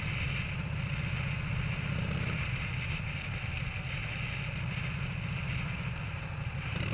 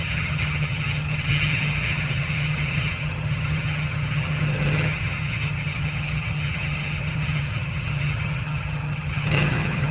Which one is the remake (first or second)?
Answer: second